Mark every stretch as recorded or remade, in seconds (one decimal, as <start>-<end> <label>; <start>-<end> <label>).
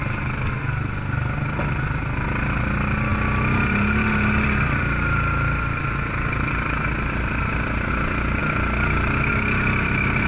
0.0-10.3 recorded